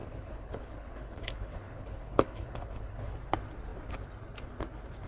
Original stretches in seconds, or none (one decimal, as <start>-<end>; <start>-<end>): 3.1-5.1